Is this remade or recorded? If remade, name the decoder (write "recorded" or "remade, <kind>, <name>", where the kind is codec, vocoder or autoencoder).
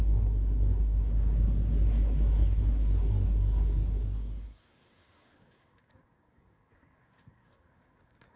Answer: remade, codec, SNAC